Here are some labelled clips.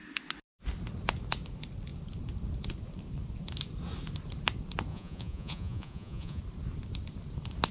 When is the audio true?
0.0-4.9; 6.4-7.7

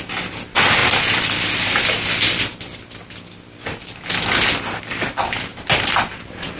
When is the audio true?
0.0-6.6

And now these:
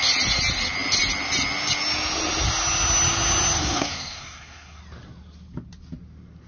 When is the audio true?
0.0-3.6; 4.8-6.5